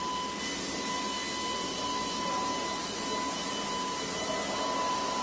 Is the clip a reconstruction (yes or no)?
no